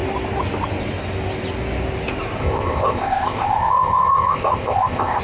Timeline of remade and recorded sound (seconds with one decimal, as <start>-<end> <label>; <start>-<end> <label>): 0.0-2.4 recorded; 2.4-5.2 remade